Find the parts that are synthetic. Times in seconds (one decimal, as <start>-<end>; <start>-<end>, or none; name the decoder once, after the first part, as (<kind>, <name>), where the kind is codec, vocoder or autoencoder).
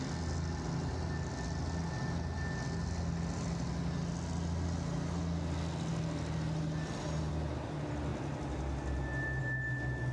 none